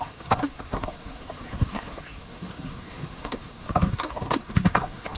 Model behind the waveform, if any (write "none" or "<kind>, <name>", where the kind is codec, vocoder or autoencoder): codec, SNAC